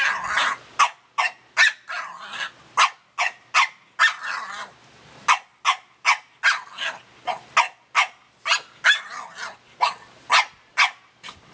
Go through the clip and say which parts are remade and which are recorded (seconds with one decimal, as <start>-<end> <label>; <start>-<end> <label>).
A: 0.0-0.4 recorded; 0.4-1.3 remade; 1.3-11.5 recorded